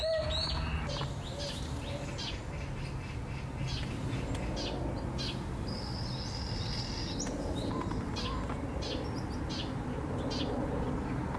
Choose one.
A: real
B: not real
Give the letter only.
A